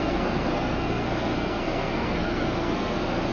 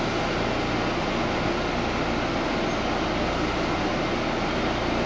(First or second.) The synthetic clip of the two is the first